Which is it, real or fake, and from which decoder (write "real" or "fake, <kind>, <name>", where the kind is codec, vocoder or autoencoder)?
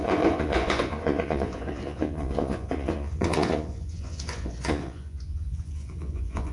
fake, vocoder, Vocos